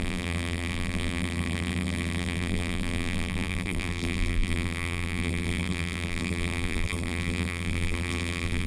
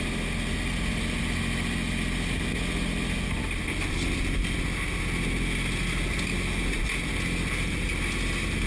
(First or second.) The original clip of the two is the second